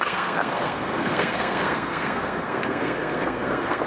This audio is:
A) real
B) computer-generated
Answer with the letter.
B